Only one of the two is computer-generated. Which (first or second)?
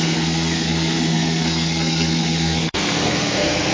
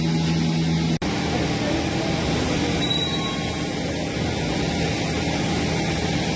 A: first